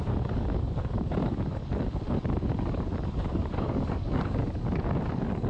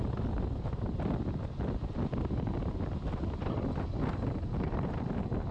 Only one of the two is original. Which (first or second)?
second